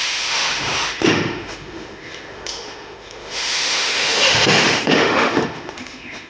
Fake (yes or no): yes